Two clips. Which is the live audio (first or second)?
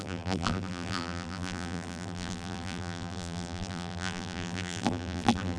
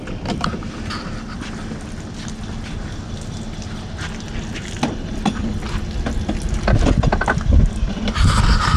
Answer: second